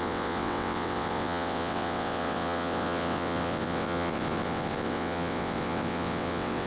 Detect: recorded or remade remade